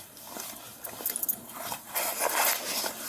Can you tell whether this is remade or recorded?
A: recorded